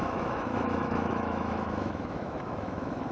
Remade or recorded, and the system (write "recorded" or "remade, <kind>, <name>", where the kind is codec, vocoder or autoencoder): remade, autoencoder, DAC-VAE